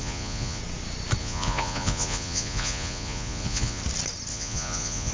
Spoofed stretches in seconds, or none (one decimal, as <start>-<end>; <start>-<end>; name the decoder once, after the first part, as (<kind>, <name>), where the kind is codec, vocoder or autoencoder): 0.0-0.6 (vocoder, Vocos); 1.2-3.8; 4.3-5.1